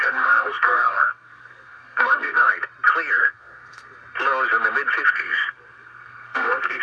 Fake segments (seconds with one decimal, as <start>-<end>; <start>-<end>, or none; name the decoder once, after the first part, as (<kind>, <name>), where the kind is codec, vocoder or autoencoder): 0.0-2.5 (codec, SNAC); 3.1-3.9; 5.1-6.8